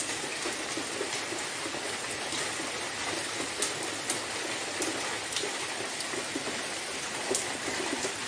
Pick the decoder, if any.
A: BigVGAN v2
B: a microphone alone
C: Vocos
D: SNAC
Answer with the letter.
B